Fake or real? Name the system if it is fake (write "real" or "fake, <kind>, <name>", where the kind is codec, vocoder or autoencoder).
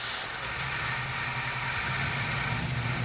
real